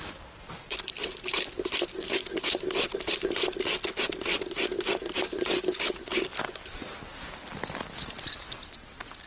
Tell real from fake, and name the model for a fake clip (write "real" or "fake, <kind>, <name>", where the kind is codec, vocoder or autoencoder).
real